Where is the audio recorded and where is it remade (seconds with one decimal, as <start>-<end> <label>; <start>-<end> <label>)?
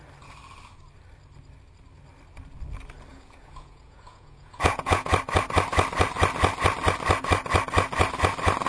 0.0-3.1 recorded; 3.1-5.1 remade; 5.1-8.7 recorded